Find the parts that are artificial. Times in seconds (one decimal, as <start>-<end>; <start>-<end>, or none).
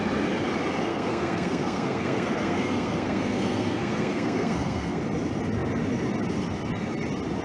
0.9-5.0